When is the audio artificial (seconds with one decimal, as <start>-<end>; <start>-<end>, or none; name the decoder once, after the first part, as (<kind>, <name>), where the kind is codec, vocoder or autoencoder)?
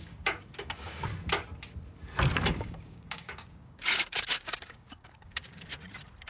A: 0.0-1.1 (codec, DAC); 2.6-5.7